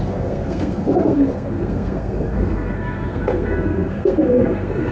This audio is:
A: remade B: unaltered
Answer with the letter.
A